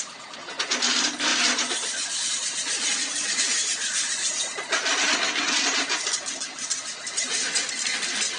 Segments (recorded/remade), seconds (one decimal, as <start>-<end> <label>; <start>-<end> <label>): 0.0-8.4 recorded